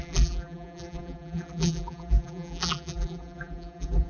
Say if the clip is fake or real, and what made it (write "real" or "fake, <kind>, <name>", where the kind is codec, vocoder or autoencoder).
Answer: fake, vocoder, BigVGAN v2